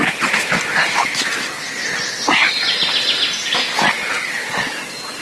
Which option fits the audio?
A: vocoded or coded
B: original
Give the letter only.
B